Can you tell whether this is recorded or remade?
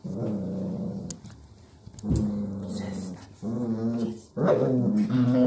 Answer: recorded